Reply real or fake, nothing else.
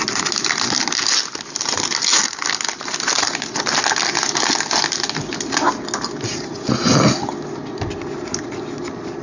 real